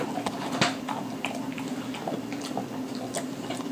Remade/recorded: recorded